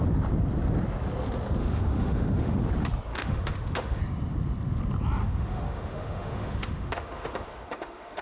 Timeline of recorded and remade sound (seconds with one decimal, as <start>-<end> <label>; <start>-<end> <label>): 0.0-1.6 recorded; 1.6-2.6 remade; 2.6-3.1 recorded; 3.1-4.0 remade; 4.0-5.2 recorded; 5.2-8.2 remade